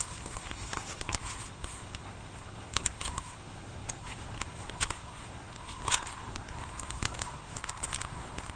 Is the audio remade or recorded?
remade